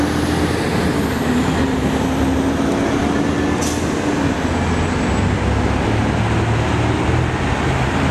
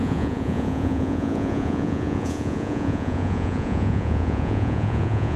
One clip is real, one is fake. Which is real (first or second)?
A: first